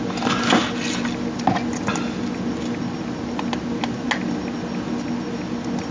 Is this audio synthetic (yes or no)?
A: no